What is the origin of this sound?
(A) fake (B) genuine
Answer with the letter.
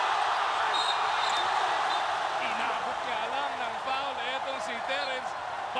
B